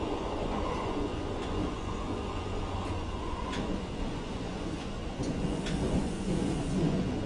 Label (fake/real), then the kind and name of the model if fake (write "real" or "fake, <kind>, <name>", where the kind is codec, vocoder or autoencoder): fake, vocoder, Vocos